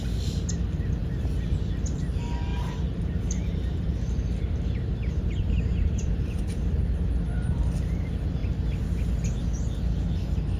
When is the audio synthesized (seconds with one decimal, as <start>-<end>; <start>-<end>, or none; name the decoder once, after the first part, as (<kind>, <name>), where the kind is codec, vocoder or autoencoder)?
2.5-6.4 (vocoder, BigVGAN v2)